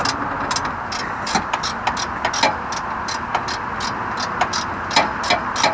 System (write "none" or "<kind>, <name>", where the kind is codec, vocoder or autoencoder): none